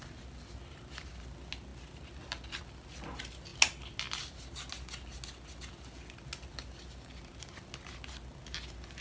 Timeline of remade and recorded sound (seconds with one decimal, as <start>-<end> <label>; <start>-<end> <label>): 0.0-9.0 recorded